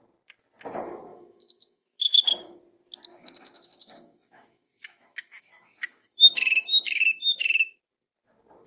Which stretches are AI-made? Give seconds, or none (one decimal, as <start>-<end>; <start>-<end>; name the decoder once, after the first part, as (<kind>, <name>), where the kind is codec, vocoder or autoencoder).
1.1-2.6 (autoencoder, DAC-VAE); 3.1-7.8